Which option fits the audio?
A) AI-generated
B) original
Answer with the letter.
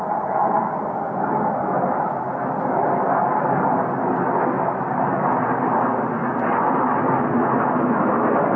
B